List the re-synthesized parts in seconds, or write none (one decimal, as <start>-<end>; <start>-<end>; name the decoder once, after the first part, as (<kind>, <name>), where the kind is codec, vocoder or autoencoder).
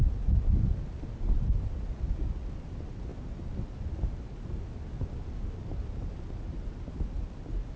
none